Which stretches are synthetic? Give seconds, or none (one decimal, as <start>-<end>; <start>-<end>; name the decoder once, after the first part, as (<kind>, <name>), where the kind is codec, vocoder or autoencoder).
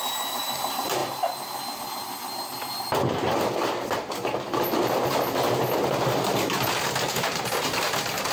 none